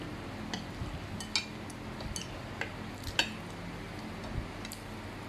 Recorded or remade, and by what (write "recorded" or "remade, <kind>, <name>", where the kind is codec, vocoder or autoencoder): recorded